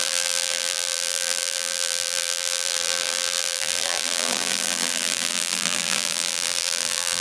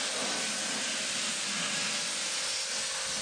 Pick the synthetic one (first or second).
first